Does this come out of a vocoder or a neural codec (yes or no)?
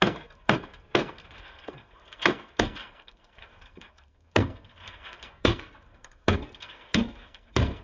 yes